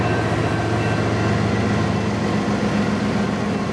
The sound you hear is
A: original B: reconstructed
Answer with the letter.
A